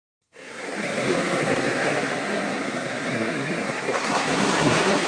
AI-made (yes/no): yes